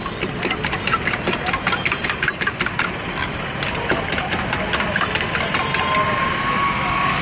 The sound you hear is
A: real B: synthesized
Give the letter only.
A